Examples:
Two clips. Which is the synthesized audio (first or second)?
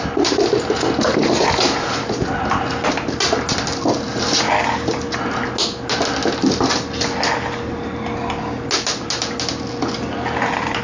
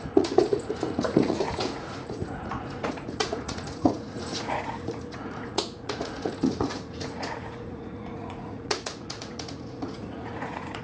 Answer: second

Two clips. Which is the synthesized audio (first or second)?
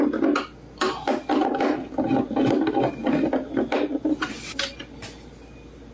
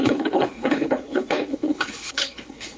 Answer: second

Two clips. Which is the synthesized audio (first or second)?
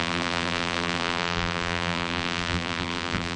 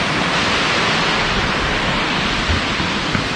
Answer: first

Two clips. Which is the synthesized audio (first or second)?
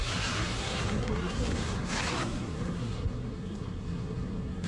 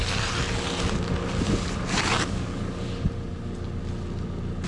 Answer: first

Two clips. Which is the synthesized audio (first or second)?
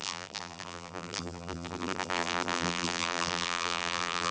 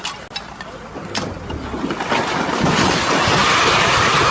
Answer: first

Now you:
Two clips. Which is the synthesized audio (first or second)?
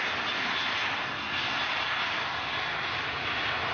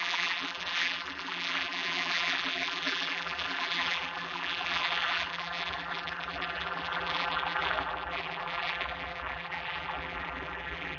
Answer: second